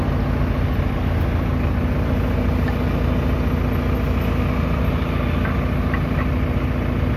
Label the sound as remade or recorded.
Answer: recorded